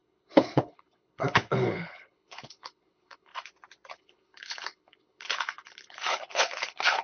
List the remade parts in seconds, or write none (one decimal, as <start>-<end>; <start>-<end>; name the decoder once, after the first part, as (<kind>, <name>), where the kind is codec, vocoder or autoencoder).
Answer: 0.0-3.3 (codec, HILCodec); 3.9-7.0